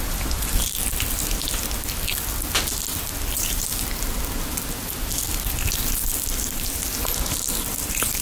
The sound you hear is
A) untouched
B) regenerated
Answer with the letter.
A